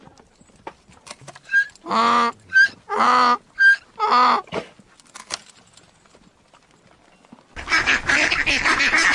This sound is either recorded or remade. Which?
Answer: recorded